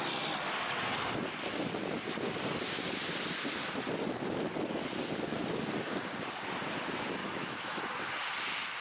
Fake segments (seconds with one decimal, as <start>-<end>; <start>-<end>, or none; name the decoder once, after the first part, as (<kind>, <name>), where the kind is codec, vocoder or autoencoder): 7.2-7.8 (autoencoder, DAC-VAE)